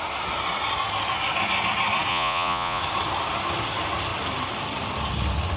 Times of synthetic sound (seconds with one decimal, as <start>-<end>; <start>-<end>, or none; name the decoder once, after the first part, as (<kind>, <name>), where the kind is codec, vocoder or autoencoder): 2.1-2.8 (vocoder, Vocos)